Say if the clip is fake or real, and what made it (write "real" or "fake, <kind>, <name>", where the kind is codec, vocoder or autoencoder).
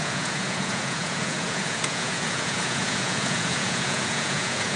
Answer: fake, vocoder, Vocos